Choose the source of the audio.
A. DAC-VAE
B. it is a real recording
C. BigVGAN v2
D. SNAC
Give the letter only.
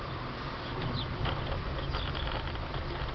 B